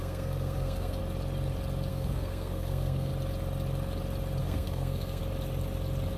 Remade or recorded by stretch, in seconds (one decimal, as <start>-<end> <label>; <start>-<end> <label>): 0.0-1.0 remade; 1.0-1.9 recorded; 1.9-3.1 remade; 3.1-4.4 recorded; 4.4-5.2 remade; 5.2-6.2 recorded